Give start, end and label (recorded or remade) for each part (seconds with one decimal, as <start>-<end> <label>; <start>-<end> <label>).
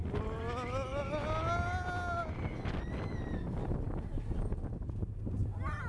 0.0-5.9 recorded